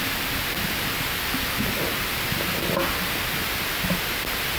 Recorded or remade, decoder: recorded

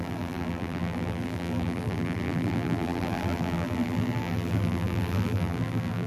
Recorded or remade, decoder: remade, vocoder, BigVGAN v2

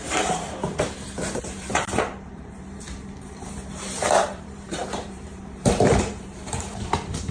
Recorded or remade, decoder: remade, vocoder, BigVGAN v2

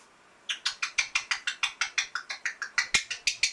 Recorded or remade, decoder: recorded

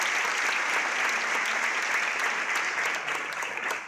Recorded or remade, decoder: recorded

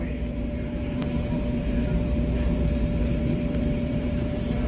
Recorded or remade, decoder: remade, vocoder, BigVGAN v2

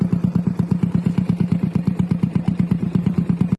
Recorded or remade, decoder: remade, vocoder, BigVGAN v2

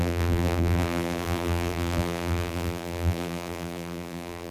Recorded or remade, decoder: remade, vocoder, BigVGAN v2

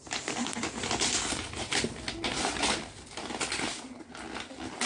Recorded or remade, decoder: recorded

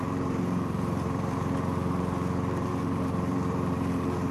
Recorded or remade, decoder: remade, vocoder, BigVGAN v2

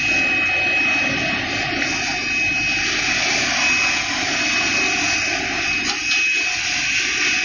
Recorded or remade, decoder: recorded